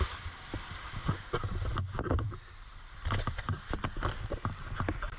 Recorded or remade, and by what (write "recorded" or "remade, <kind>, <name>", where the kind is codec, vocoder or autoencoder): recorded